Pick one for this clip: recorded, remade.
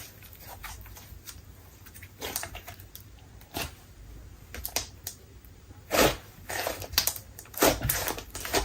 remade